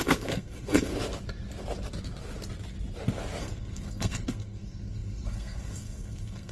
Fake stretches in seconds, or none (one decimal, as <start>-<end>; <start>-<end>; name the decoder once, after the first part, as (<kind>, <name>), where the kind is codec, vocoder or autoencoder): 0.0-0.9 (codec, SNAC); 3.4-6.5